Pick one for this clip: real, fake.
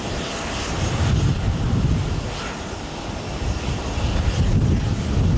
real